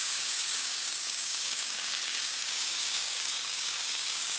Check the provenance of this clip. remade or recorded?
remade